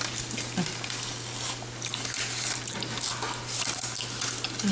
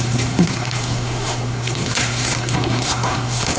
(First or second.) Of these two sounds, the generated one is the second